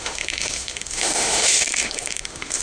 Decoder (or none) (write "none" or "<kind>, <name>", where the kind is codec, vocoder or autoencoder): autoencoder, DAC-VAE